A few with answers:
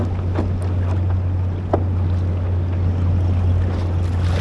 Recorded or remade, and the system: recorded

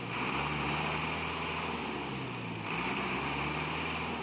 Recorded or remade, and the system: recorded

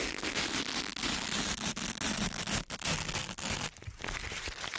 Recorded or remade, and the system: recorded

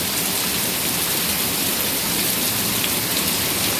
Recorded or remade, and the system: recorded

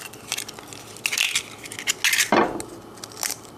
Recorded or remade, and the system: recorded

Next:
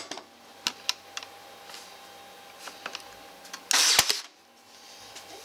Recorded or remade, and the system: recorded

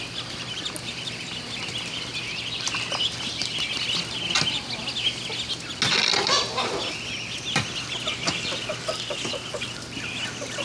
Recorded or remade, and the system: recorded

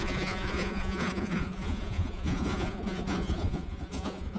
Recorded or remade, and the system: remade, vocoder, Vocos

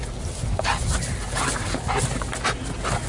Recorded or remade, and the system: recorded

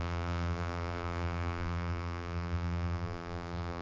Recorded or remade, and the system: remade, vocoder, BigVGAN v2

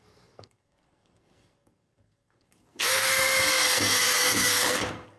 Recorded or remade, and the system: remade, codec, SNAC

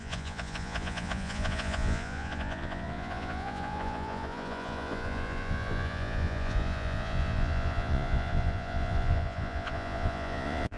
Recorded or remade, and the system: remade, vocoder, Vocos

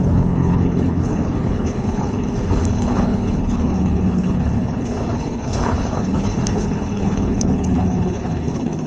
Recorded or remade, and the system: remade, codec, HILCodec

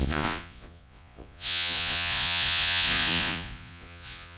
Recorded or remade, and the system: remade, vocoder, Vocos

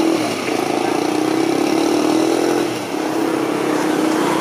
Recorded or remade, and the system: recorded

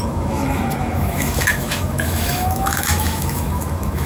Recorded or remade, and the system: remade, autoencoder, DAC-VAE